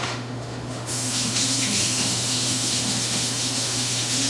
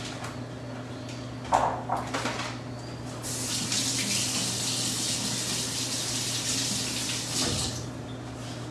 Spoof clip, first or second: first